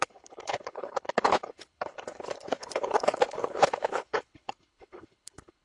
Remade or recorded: remade